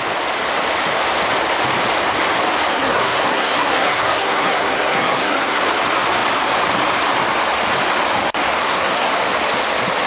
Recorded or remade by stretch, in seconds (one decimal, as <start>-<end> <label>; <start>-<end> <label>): 0.0-2.7 recorded; 2.7-5.6 remade; 5.6-8.6 recorded; 8.6-9.1 remade; 9.1-10.1 recorded